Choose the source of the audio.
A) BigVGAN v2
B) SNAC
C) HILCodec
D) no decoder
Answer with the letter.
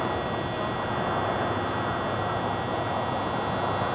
D